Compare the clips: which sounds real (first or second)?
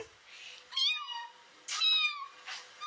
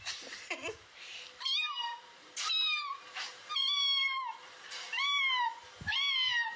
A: first